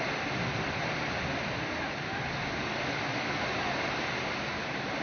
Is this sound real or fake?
real